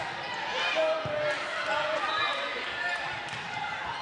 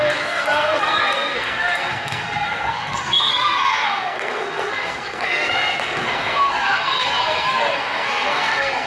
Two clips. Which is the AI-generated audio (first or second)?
second